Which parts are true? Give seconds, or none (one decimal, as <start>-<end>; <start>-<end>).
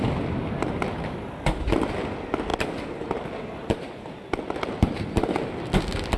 0.0-6.2